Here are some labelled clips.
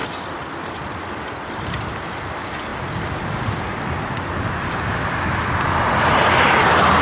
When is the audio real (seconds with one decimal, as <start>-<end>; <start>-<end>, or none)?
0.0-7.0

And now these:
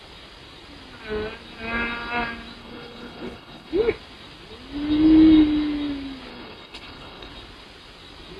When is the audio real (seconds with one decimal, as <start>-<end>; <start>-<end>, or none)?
0.0-2.6; 3.7-6.3; 7.3-8.4

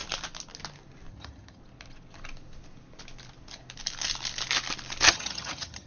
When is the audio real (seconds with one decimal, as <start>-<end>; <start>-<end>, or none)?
0.0-1.1; 1.6-5.1

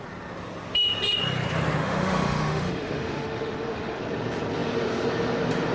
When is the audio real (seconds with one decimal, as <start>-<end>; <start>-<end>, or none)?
0.0-1.8; 4.0-5.7

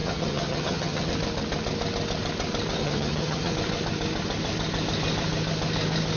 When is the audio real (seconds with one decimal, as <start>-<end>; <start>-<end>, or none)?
1.1-2.8; 3.5-6.2